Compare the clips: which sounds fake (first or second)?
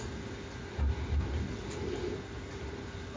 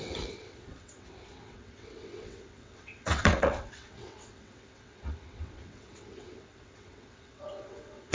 second